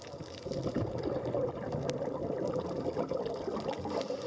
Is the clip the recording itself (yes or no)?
yes